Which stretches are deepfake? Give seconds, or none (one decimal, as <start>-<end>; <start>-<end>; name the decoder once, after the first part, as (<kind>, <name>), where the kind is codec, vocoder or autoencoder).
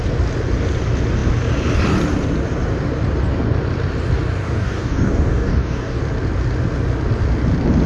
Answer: 4.4-6.0 (codec, DAC)